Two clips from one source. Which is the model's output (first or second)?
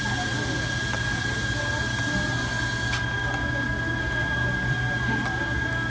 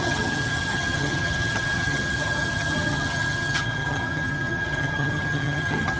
second